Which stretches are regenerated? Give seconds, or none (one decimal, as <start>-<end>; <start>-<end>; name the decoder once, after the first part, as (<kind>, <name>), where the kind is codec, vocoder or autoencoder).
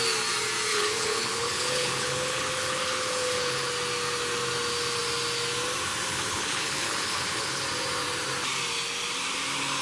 0.7-3.7 (codec, HILCodec); 6.1-7.6